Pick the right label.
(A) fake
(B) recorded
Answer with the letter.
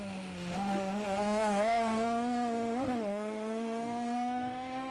A